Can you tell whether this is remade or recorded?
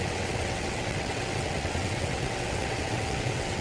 remade